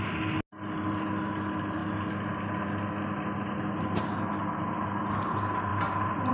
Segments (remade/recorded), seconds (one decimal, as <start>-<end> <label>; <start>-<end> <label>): 0.0-6.3 recorded